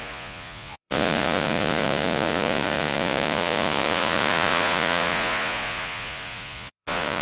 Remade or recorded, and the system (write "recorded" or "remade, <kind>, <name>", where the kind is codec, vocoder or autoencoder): remade, vocoder, Vocos